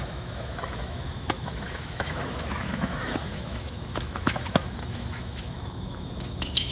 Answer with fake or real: fake